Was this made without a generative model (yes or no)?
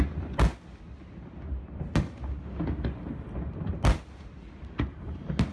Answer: yes